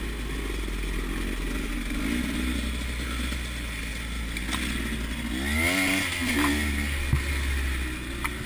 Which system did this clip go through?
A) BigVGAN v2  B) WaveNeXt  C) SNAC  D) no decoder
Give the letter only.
D